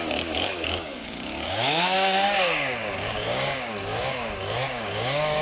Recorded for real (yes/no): no